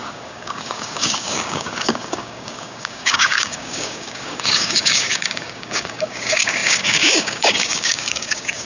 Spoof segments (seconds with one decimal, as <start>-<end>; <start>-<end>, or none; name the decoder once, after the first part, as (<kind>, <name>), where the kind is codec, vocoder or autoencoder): 0.0-8.6 (codec, DAC)